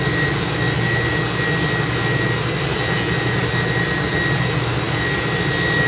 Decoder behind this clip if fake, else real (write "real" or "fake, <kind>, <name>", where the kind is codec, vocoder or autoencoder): real